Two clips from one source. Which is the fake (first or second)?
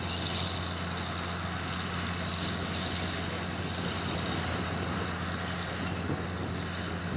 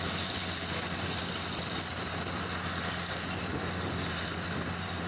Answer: second